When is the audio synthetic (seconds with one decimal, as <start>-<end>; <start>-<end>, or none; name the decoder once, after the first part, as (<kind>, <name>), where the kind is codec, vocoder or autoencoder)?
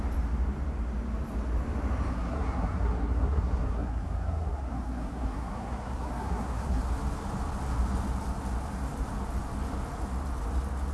2.1-6.9 (codec, SNAC)